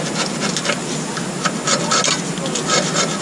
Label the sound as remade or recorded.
recorded